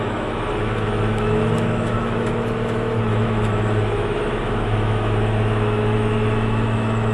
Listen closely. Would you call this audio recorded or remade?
remade